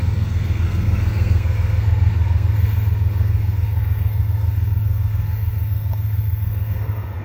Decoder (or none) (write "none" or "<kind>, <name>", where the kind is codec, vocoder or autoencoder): codec, SNAC